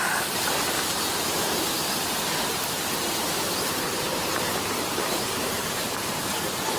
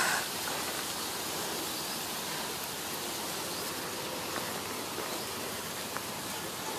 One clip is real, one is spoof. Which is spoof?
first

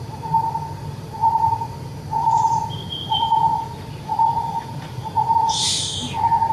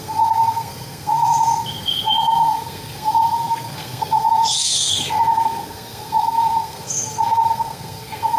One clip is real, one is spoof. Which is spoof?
second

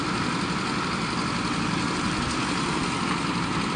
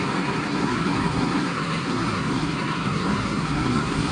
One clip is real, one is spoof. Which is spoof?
second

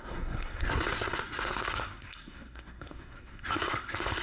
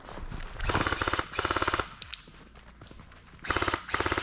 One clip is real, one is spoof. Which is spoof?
first